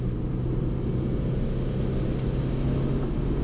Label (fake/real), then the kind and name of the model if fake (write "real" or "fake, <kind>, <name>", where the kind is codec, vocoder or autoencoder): real